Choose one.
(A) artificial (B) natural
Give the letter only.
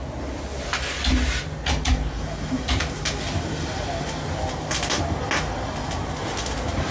B